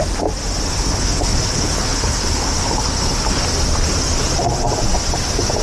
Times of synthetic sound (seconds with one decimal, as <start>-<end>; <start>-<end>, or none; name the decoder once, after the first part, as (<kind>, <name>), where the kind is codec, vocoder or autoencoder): 0.7-3.4 (codec, HILCodec)